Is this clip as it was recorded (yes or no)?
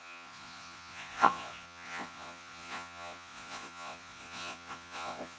no